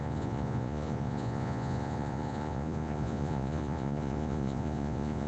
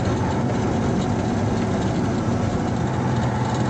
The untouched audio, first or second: second